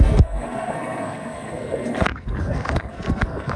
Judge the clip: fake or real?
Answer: fake